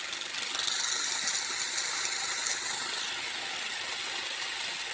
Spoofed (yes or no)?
no